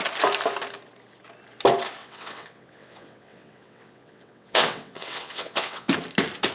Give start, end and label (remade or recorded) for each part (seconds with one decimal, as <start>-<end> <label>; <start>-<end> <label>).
0.0-2.0 recorded; 2.0-5.9 remade; 5.9-6.5 recorded